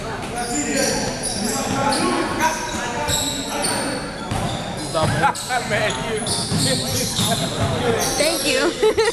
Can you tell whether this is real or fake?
real